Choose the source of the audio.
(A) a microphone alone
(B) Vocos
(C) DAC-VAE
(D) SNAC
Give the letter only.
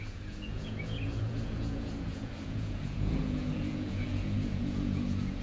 B